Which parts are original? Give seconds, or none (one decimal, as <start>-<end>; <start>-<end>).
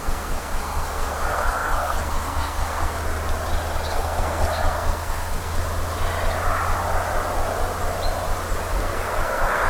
3.0-3.9; 5.6-8.7